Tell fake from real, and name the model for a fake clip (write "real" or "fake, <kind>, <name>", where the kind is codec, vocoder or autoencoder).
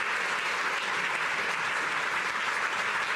real